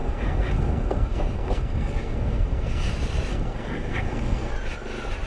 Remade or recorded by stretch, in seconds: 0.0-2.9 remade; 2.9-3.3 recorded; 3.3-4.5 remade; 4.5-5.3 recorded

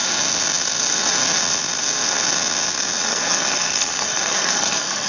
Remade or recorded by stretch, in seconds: 0.0-3.1 recorded; 3.1-5.1 remade